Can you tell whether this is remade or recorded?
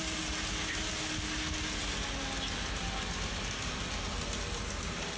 recorded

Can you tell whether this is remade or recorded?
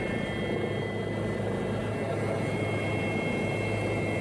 recorded